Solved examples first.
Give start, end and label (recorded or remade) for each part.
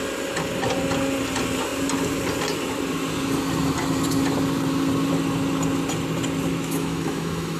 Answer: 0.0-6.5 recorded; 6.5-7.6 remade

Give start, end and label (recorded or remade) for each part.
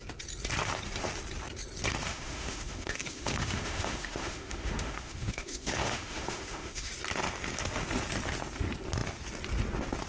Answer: 0.0-2.1 recorded; 2.1-6.9 remade; 6.9-10.1 recorded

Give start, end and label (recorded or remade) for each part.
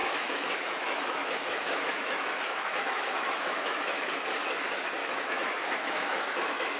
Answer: 0.0-4.1 remade; 4.1-5.0 recorded; 5.0-6.8 remade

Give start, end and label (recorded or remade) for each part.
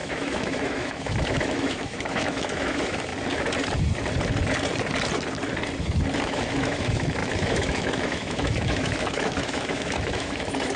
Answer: 0.0-3.1 remade; 3.1-6.2 recorded; 6.2-10.8 remade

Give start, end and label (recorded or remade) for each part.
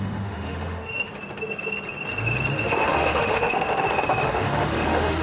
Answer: 0.0-1.1 remade; 1.1-2.5 recorded; 2.5-5.2 remade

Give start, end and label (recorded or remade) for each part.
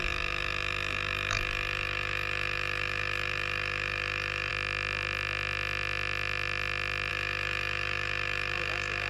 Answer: 0.0-4.5 remade; 4.5-7.1 recorded; 7.1-9.1 remade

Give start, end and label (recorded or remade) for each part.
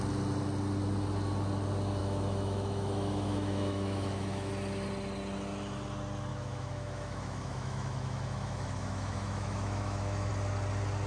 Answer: 0.0-2.0 recorded; 2.0-4.5 remade; 4.5-6.3 recorded; 6.3-10.3 remade; 10.3-11.1 recorded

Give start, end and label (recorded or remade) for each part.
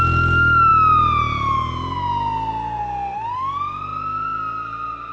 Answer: 0.0-5.1 recorded